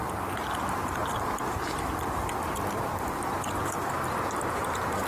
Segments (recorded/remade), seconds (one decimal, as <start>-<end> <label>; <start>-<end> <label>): 0.0-1.0 recorded; 1.0-4.1 remade; 4.1-5.1 recorded